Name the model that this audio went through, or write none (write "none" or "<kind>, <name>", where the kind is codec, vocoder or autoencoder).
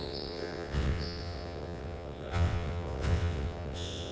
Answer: vocoder, WaveNeXt